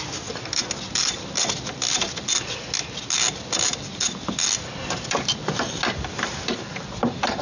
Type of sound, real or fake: real